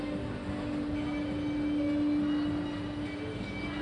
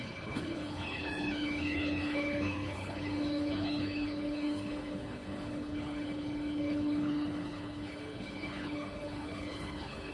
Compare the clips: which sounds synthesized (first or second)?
second